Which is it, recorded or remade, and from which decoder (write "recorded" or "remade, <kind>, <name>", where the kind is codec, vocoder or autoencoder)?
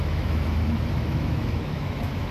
remade, autoencoder, DAC-VAE